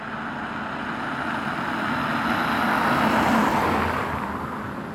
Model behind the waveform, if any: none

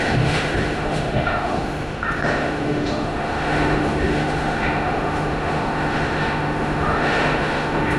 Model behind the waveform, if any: autoencoder, DAC-VAE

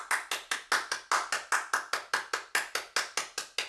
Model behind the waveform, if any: none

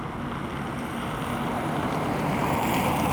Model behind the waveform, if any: none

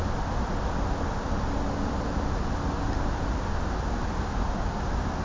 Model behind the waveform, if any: none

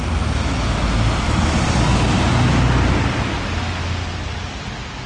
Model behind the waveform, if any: none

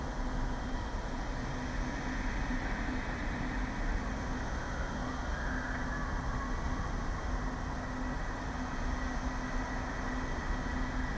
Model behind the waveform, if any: none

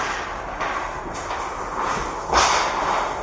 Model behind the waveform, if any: none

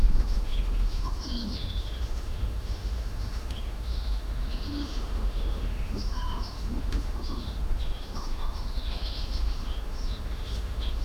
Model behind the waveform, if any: autoencoder, DAC-VAE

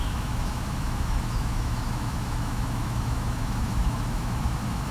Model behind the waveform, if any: autoencoder, DAC-VAE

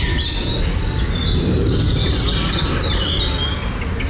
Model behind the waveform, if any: none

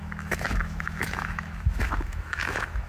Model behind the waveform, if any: autoencoder, DAC-VAE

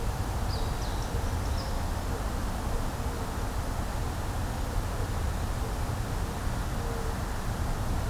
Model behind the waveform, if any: none